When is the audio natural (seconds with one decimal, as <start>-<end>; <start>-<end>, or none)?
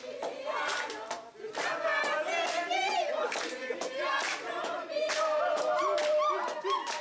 0.0-7.0